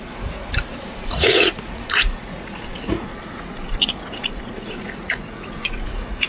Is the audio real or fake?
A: fake